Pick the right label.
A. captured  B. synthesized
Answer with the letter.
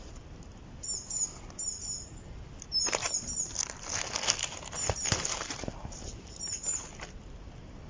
A